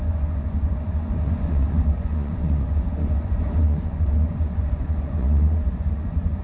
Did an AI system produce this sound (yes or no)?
yes